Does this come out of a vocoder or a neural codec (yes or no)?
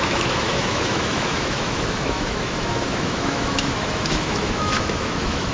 yes